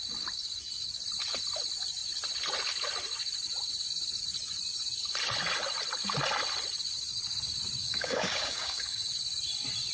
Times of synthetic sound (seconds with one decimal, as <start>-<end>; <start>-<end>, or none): 7.8-9.1